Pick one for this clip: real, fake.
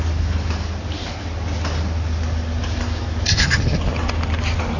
real